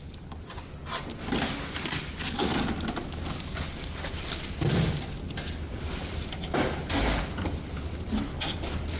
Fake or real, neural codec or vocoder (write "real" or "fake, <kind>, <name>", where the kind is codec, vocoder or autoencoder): real